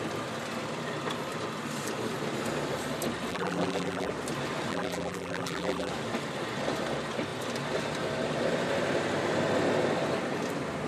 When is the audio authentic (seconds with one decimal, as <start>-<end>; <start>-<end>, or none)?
0.0-3.3; 4.1-4.7; 5.9-10.9